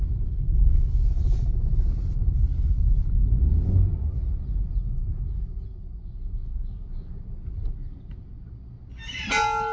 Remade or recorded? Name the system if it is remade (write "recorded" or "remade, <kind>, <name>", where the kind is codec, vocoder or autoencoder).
recorded